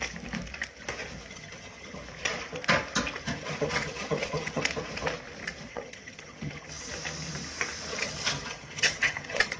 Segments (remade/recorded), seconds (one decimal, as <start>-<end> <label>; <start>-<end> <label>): 0.0-1.3 recorded; 1.3-2.0 remade; 2.0-3.2 recorded; 3.2-4.6 remade; 4.6-5.7 recorded; 5.7-6.9 remade; 6.9-7.9 recorded; 7.9-9.6 remade